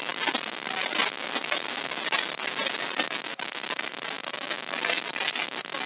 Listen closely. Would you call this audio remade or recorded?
recorded